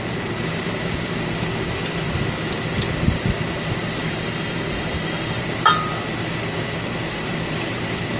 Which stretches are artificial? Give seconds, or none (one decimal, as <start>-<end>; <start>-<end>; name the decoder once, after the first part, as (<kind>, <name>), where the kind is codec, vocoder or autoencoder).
4.0-5.4 (codec, DAC)